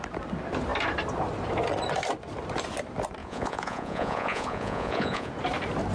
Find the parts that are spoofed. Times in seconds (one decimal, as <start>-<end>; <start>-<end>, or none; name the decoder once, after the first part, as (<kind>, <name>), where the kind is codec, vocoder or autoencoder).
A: 3.2-5.3 (vocoder, Vocos)

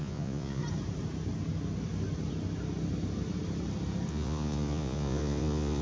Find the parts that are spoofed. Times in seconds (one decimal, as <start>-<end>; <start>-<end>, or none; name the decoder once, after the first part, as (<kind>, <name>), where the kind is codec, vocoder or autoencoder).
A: 0.0-0.6 (vocoder, Vocos); 4.1-5.8

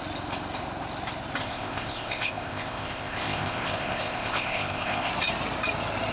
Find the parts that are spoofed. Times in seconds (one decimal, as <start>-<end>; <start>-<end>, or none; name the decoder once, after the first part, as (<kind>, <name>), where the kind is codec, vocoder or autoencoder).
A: 1.4-5.1 (codec, ZipCodec)

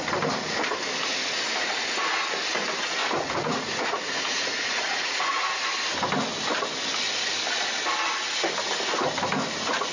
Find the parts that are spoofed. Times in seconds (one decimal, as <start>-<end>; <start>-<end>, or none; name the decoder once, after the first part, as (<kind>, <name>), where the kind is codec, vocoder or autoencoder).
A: 3.0-5.6 (vocoder, Vocos)

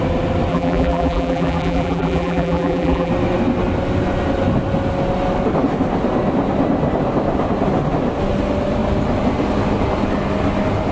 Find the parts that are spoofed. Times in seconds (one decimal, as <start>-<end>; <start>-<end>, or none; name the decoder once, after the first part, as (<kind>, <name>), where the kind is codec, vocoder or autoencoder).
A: 0.5-3.1 (vocoder, BigVGAN v2)